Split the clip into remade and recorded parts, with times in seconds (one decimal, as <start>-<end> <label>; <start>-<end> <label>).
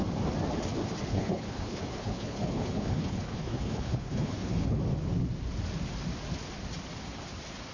0.0-1.1 recorded; 1.1-4.8 remade; 4.8-7.7 recorded